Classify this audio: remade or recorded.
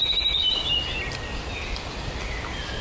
recorded